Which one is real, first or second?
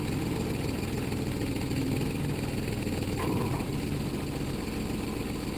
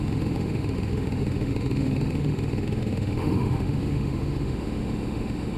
first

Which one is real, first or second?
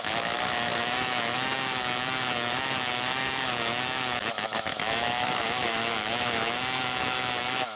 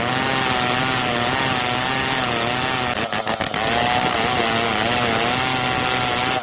second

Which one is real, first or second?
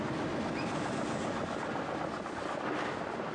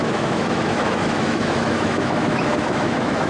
first